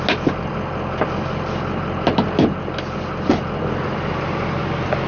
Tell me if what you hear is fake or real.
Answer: real